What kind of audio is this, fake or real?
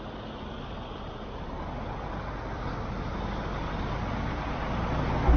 real